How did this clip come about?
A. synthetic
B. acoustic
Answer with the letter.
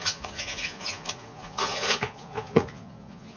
A